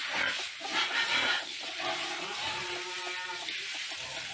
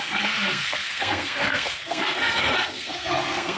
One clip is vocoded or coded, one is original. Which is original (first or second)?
first